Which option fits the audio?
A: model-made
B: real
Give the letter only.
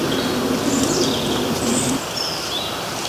B